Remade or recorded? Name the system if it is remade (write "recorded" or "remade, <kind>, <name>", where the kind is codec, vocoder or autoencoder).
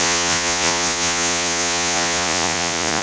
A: remade, vocoder, Vocos